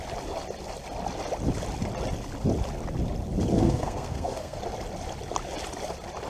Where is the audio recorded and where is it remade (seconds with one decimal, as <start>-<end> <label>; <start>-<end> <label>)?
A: 0.0-3.5 recorded; 3.5-4.6 remade; 4.6-6.3 recorded